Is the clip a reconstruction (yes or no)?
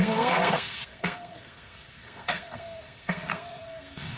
yes